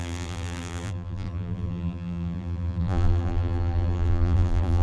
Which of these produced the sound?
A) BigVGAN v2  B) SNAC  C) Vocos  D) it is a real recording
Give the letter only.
A